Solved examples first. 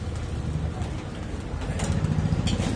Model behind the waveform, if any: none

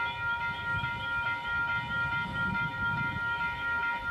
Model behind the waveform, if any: none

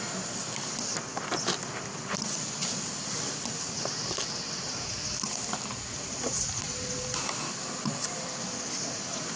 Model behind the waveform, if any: none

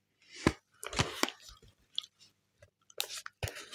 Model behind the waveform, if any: none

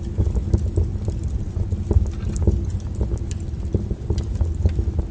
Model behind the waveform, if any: none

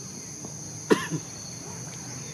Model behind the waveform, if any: none